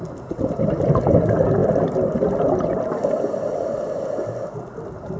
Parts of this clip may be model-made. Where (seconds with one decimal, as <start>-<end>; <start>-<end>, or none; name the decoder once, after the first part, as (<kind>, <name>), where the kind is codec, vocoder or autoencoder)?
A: none